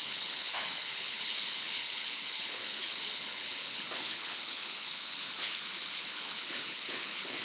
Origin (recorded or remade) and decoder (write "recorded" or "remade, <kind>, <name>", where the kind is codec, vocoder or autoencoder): remade, codec, HILCodec